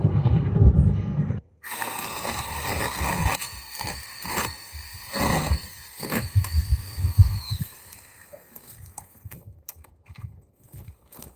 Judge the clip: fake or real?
fake